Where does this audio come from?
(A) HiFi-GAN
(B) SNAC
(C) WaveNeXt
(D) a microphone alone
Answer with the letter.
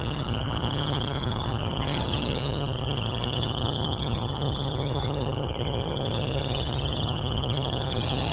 A